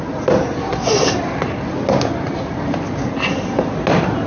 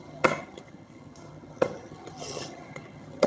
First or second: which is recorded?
first